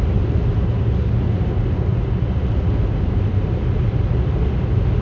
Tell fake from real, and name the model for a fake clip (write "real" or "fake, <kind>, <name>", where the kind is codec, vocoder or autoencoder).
real